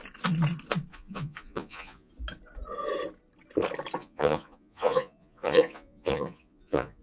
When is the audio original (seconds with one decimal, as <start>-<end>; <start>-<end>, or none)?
0.0-0.9; 2.1-4.0